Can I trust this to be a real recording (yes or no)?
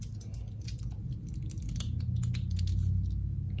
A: yes